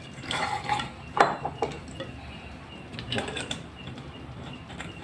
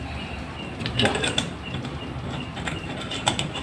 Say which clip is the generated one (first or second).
second